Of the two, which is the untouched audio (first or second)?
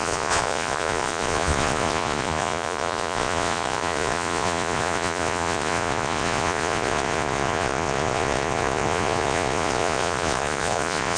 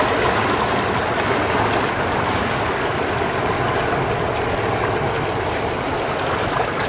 second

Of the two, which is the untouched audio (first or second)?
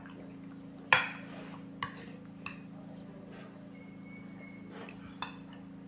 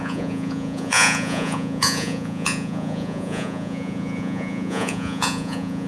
first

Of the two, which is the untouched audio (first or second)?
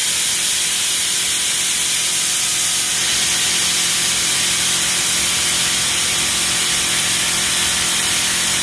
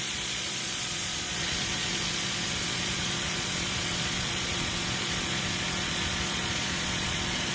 first